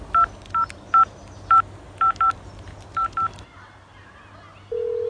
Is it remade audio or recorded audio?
recorded